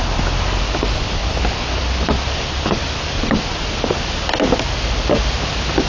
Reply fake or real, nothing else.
real